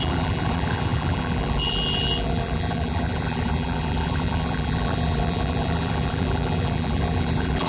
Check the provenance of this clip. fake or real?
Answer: fake